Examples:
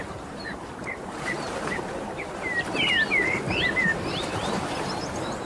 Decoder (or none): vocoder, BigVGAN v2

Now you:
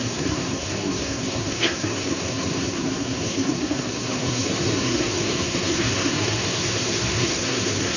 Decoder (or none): codec, SNAC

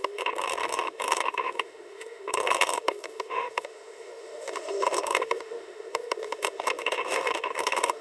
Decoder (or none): autoencoder, DAC-VAE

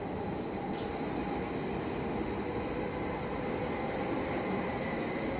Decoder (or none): none